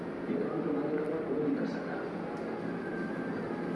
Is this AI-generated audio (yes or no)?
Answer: no